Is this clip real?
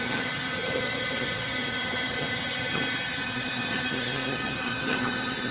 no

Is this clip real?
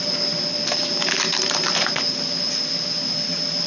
yes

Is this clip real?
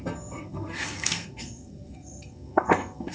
no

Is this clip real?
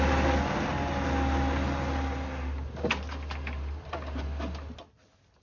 yes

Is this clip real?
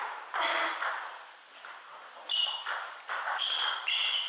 yes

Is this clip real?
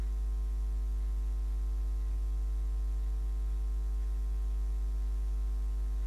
yes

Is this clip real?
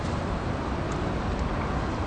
yes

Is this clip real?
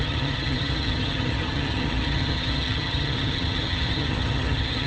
no